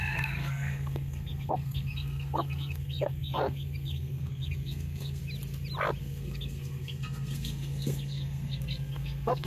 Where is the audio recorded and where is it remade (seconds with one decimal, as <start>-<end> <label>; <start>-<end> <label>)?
0.0-5.2 remade; 5.2-6.0 recorded; 6.0-9.5 remade